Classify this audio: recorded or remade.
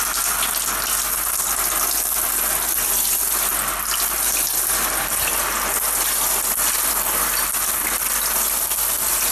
recorded